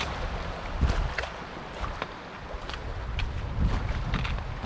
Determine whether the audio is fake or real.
real